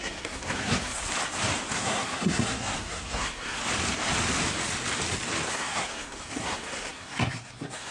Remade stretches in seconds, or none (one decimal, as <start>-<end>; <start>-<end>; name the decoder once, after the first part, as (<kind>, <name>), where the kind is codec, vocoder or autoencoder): 0.0-1.0 (codec, SNAC); 1.7-3.6; 5.5-7.9

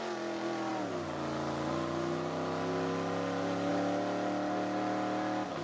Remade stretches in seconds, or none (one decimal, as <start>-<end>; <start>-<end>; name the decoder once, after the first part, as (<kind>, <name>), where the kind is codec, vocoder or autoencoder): none